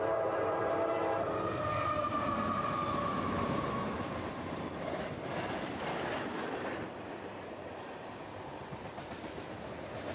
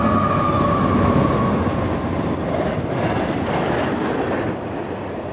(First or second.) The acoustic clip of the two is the second